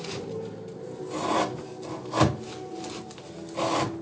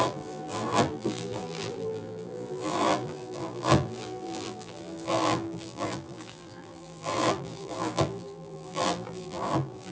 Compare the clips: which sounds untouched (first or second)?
first